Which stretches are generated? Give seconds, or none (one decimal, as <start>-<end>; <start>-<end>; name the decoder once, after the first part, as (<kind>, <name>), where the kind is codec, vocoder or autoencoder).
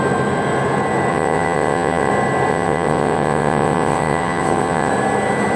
1.1-2.1 (vocoder, WaveNeXt); 2.5-4.9